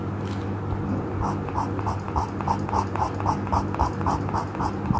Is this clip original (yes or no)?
yes